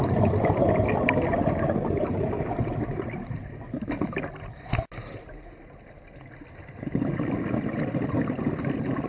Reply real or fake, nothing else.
real